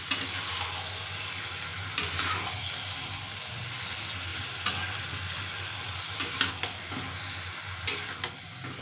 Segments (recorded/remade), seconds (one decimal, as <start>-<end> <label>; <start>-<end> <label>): 0.0-1.7 recorded; 1.7-2.5 remade; 2.5-8.8 recorded